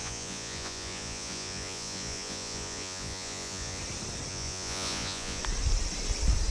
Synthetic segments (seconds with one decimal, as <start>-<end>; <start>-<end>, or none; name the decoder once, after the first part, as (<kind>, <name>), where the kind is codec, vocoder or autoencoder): 0.0-3.8 (vocoder, Vocos); 4.3-5.4